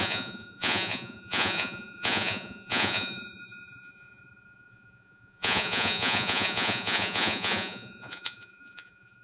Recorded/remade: remade